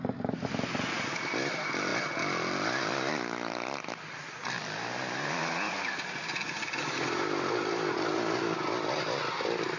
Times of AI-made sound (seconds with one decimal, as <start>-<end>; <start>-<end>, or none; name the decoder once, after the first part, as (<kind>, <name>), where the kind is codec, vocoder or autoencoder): none